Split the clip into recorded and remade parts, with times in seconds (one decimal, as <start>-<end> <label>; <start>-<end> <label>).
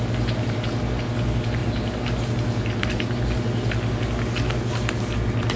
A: 0.0-5.6 recorded